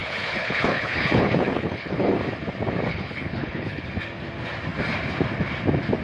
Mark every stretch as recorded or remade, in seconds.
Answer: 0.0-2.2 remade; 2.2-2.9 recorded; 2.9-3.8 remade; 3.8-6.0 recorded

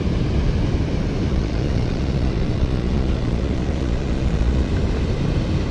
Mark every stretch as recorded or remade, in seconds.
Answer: 0.0-1.3 recorded; 1.3-4.7 remade; 4.7-5.7 recorded

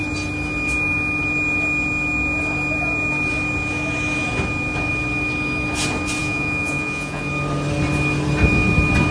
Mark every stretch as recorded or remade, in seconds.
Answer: 0.0-6.2 recorded; 6.2-7.2 remade; 7.2-9.1 recorded

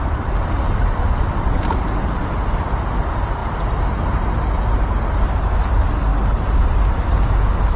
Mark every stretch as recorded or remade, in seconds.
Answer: 0.0-7.8 recorded